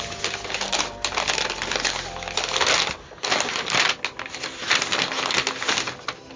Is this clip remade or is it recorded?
recorded